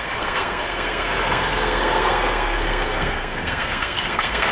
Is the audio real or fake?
fake